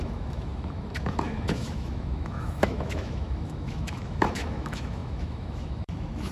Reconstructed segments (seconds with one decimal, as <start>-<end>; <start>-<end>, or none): 0.0-6.3

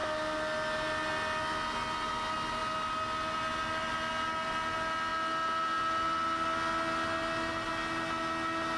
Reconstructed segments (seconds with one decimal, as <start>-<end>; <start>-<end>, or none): none

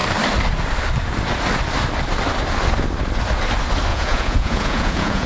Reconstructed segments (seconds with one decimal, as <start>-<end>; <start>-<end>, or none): 3.9-5.3

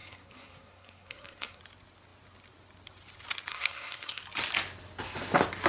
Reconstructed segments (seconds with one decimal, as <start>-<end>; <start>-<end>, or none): 0.0-1.6; 3.5-4.2

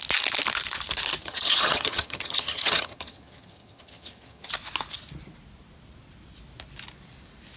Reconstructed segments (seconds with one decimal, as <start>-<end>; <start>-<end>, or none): 1.2-4.5